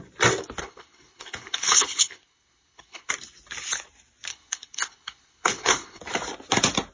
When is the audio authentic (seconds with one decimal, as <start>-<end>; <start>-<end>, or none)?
0.0-0.6; 3.1-4.3; 6.0-6.9